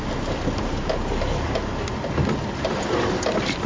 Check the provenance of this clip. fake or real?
real